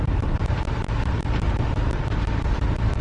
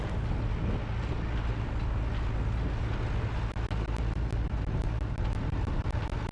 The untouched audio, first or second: second